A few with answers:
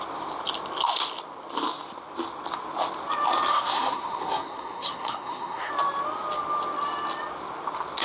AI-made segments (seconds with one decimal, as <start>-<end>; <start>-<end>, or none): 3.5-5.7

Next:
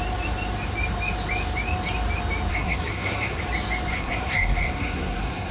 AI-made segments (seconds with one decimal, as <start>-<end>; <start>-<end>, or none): 2.5-3.4; 3.9-5.5

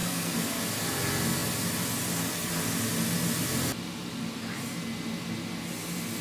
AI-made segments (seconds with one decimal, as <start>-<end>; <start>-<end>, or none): 0.0-0.6